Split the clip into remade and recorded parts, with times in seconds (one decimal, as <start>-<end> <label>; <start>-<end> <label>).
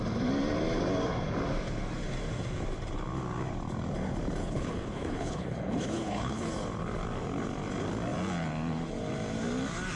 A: 0.0-4.4 recorded; 4.4-6.5 remade; 6.5-10.0 recorded